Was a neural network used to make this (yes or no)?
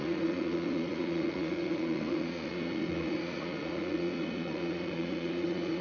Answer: yes